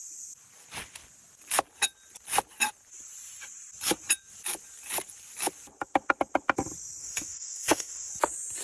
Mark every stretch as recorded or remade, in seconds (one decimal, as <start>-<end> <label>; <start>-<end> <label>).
0.0-7.0 recorded; 7.0-8.1 remade; 8.1-8.6 recorded